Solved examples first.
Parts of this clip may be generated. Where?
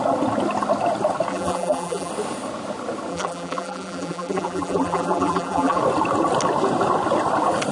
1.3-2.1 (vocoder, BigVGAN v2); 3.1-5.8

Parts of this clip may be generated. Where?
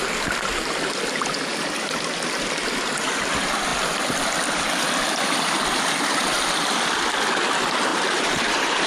7.9-8.9 (vocoder, BigVGAN v2)